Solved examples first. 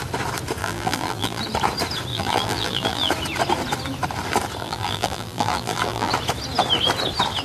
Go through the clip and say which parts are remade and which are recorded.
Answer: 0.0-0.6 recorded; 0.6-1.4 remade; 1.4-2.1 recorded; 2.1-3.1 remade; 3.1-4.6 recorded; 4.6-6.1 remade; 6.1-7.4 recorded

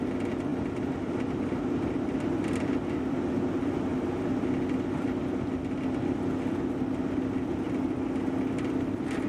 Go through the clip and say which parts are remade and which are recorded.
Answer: 0.0-9.3 recorded

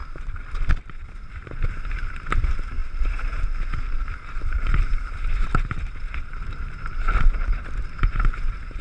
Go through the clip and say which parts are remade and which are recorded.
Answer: 0.0-1.3 remade; 1.3-2.8 recorded; 2.8-7.8 remade; 7.8-8.8 recorded

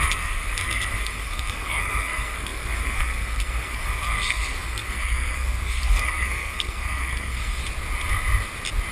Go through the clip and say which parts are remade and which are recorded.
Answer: 0.0-7.6 remade; 7.6-8.9 recorded

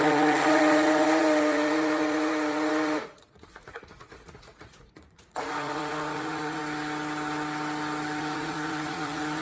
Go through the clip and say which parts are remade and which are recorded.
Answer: 0.0-6.6 remade; 6.6-8.2 recorded; 8.2-9.4 remade

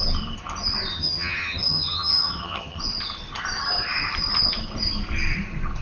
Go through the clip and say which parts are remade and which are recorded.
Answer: 0.0-0.9 recorded; 0.9-2.8 remade; 2.8-5.8 recorded